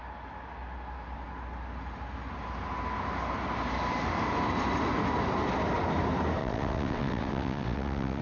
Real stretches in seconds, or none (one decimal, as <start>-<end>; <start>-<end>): 0.0-6.4